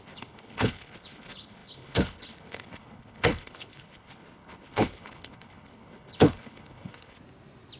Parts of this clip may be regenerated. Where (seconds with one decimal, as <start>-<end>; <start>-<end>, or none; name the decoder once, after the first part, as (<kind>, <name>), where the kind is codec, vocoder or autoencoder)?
0.0-7.2 (codec, HILCodec)